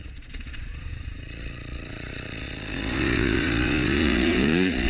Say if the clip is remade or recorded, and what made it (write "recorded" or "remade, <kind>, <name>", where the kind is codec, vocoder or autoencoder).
remade, vocoder, Vocos